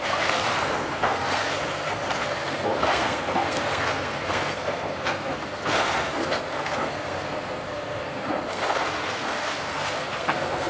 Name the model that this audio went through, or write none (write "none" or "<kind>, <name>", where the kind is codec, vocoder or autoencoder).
codec, SNAC